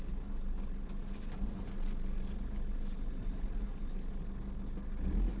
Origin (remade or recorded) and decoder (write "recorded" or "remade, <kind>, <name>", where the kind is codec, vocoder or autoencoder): recorded